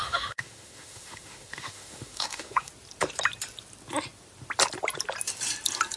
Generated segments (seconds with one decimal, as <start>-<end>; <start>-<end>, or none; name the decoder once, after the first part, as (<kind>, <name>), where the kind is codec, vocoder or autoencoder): 0.0-2.7 (autoencoder, DAC-VAE)